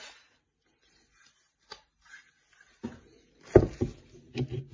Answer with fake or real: real